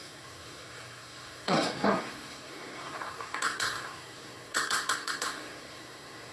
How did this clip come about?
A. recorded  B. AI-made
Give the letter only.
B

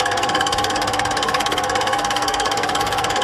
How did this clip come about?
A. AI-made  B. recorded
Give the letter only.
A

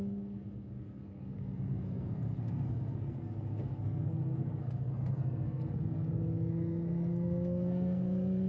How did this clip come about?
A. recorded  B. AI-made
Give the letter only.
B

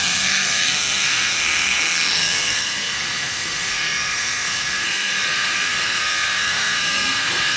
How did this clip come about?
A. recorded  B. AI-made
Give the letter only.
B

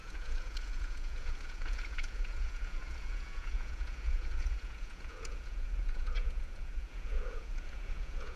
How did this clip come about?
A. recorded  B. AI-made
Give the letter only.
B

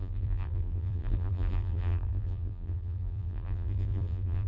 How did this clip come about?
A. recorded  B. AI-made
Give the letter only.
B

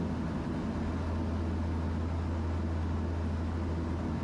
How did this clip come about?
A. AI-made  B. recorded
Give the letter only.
B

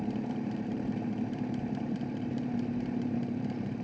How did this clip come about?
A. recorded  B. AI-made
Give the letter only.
B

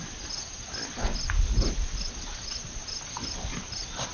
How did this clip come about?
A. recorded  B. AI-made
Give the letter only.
A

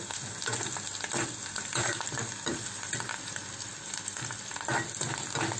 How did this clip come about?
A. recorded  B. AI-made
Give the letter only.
A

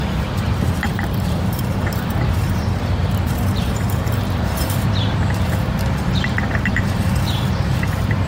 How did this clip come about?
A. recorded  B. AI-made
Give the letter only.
B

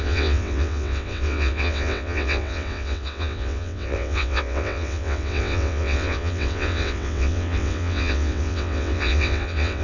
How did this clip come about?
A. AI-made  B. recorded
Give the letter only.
A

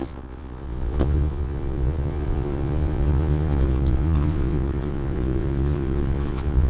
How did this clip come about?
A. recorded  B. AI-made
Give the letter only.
B